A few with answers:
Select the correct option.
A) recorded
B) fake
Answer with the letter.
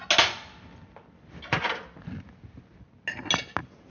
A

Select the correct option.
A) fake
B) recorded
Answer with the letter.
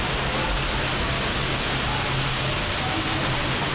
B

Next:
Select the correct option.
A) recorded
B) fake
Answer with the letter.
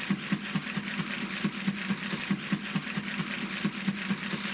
A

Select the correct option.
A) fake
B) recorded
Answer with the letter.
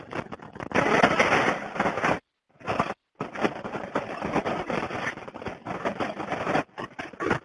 B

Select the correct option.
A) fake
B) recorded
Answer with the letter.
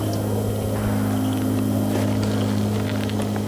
B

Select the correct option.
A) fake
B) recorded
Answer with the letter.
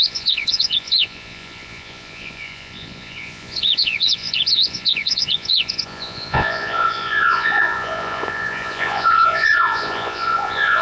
A